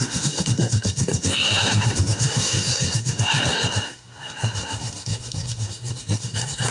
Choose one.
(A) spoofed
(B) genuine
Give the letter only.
A